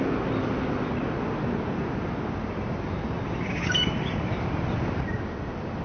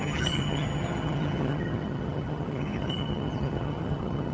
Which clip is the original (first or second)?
first